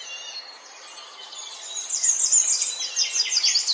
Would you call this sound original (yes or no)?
yes